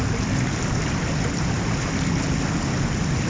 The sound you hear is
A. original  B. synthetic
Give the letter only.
A